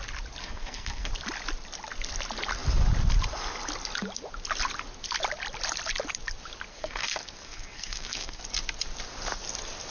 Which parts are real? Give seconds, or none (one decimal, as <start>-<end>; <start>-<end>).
0.0-0.4; 1.1-6.7; 8.4-9.9